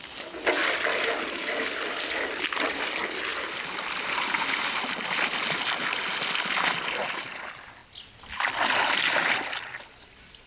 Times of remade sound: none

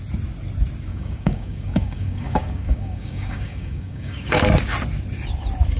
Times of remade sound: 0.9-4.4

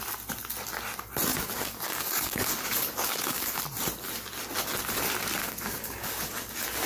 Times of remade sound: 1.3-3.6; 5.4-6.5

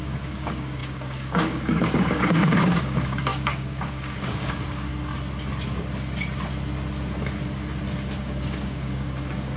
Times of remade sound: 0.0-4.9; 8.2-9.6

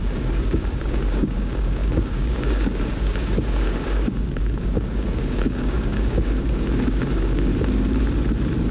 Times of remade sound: 0.0-7.5

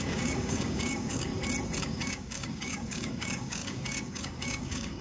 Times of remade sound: 0.0-1.3; 1.8-5.0

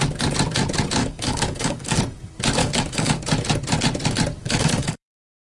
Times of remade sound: 1.0-2.0; 2.6-3.2; 4.4-5.5

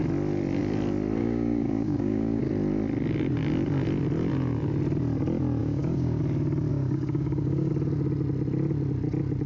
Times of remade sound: 1.2-2.4; 5.6-6.2; 6.7-7.7